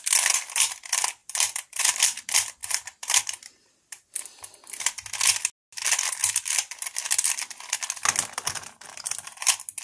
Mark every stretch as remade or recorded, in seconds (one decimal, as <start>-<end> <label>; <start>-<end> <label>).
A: 0.0-1.2 recorded; 1.2-1.8 remade; 1.8-2.6 recorded; 2.6-3.2 remade; 3.2-9.8 recorded